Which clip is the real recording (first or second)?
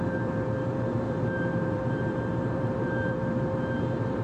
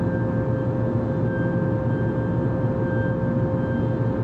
second